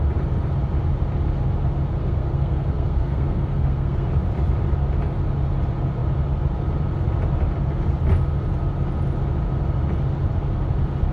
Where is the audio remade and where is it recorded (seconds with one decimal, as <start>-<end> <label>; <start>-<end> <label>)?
0.0-2.0 recorded; 2.0-4.1 remade; 4.1-11.1 recorded